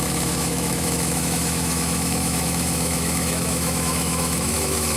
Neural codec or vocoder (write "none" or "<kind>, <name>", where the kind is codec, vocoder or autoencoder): autoencoder, DAC-VAE